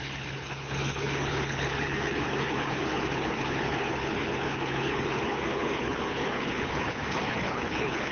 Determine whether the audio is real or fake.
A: fake